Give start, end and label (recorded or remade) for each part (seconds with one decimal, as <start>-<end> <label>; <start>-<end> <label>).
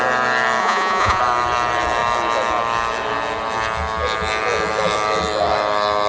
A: 0.0-0.6 recorded; 0.6-1.2 remade; 1.2-6.1 recorded